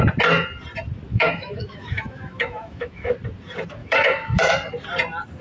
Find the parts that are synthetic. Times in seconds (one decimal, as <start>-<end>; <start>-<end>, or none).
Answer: 1.1-3.1; 3.8-4.5